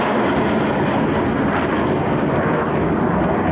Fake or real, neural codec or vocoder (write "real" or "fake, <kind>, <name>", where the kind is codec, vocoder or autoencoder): real